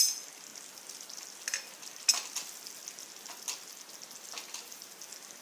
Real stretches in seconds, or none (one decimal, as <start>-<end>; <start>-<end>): 0.0-5.4